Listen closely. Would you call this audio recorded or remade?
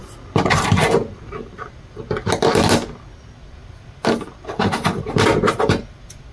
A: recorded